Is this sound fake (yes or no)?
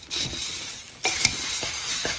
no